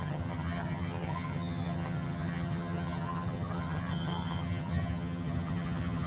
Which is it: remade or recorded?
remade